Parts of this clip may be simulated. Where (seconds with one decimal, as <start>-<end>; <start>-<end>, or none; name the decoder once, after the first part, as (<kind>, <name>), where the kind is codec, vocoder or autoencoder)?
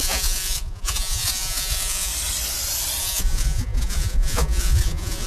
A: 0.0-2.1 (vocoder, Vocos); 3.0-5.3